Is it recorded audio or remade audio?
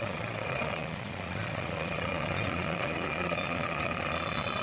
remade